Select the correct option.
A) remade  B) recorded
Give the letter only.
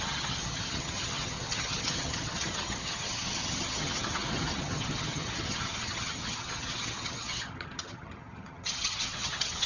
A